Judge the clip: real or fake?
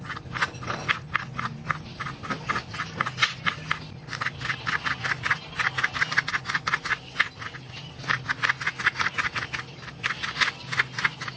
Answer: real